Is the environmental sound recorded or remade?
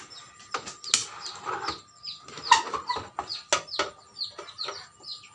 recorded